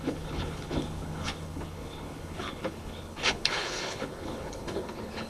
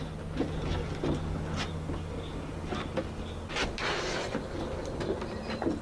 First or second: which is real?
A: second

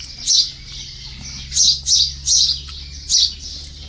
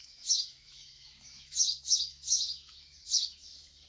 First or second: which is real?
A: first